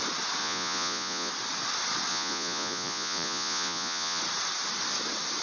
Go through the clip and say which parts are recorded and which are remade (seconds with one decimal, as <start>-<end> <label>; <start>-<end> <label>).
0.0-0.4 recorded; 0.4-1.3 remade; 1.3-2.1 recorded; 2.1-4.2 remade; 4.2-5.4 recorded